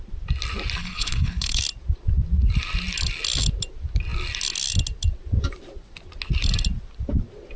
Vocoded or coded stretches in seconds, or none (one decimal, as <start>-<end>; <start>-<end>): 0.8-1.6